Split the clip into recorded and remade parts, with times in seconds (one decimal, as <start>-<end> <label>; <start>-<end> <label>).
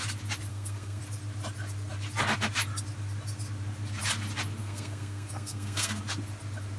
0.0-0.5 recorded; 0.5-1.0 remade; 1.0-4.6 recorded; 4.6-6.0 remade; 6.0-6.8 recorded